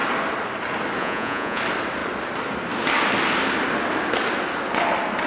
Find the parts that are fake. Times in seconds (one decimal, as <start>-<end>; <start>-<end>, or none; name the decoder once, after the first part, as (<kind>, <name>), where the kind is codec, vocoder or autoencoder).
1.0-1.6 (vocoder, Vocos)